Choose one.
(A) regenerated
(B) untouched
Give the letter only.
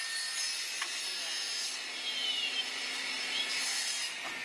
B